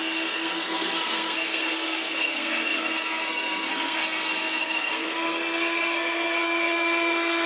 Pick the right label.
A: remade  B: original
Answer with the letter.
A